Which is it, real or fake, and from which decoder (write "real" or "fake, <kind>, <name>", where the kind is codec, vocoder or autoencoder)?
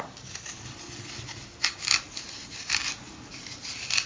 real